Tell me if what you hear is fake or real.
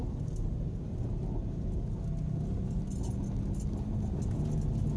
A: real